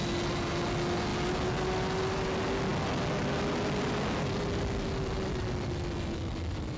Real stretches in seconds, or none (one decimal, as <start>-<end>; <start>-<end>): 0.0-6.8